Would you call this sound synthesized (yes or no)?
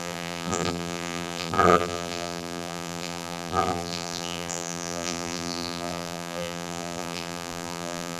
yes